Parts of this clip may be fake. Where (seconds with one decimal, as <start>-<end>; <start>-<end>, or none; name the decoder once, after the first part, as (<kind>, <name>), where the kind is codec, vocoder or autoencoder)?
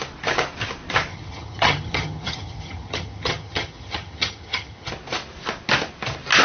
1.1-4.9 (vocoder, HiFi-GAN)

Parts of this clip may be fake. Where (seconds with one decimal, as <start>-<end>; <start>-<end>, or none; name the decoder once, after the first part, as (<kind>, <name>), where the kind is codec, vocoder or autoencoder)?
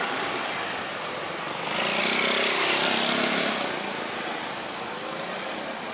none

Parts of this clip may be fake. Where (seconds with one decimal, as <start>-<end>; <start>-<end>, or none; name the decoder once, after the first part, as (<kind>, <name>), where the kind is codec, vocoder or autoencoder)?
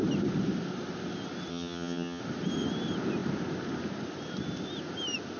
1.5-2.2 (vocoder, HiFi-GAN)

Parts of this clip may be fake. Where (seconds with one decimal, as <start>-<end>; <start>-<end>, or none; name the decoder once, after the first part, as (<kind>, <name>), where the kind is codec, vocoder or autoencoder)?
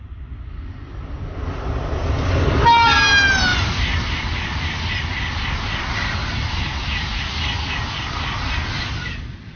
none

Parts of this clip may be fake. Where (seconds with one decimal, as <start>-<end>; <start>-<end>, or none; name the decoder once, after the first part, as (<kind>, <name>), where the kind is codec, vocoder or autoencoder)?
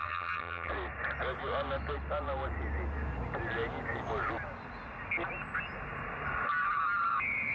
0.0-0.7 (vocoder, HiFi-GAN)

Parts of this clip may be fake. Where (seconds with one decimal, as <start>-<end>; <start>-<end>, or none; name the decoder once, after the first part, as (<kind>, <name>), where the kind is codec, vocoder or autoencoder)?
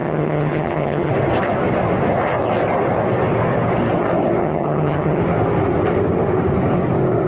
0.0-1.1 (vocoder, HiFi-GAN); 4.4-5.2